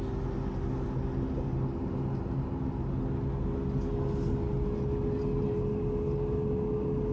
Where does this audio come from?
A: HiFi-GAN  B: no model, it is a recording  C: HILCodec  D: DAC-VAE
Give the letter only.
B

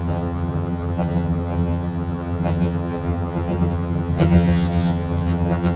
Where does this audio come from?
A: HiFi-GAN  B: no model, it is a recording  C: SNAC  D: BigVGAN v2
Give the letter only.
A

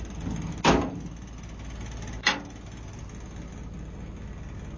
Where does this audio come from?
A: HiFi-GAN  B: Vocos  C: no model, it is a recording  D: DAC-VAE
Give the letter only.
C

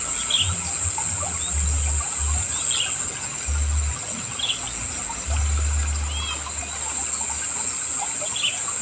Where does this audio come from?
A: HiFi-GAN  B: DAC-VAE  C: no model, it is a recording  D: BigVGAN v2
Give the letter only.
C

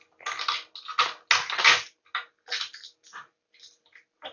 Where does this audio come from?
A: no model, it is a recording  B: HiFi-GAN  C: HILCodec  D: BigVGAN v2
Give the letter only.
A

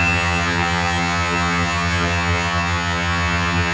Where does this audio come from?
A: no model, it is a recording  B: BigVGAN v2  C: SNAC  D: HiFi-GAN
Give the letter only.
D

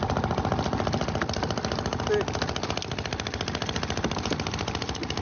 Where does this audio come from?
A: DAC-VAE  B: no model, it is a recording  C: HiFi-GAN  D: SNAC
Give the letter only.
B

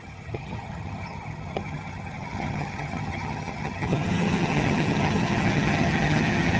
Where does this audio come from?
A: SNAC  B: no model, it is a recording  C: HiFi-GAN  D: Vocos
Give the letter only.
C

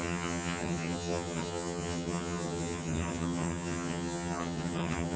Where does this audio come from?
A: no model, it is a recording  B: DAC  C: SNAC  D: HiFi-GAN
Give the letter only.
D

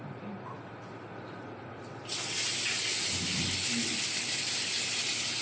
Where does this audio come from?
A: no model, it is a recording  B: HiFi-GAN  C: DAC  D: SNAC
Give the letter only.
A